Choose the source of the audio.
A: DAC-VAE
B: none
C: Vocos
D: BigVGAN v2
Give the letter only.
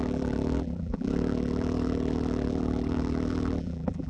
D